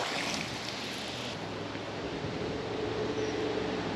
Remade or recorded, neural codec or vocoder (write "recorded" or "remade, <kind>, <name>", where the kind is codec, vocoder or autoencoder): recorded